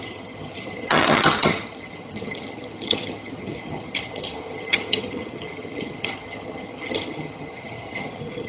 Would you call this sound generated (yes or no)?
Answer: yes